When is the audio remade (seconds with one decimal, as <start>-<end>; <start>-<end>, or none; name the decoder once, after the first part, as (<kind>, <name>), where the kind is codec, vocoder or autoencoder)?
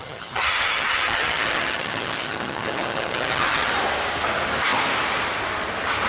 0.0-3.7 (vocoder, HiFi-GAN)